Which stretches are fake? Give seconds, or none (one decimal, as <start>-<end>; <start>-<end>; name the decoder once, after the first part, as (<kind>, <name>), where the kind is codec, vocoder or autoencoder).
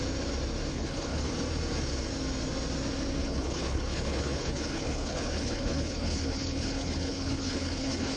0.7-1.3 (codec, HILCodec); 3.2-8.2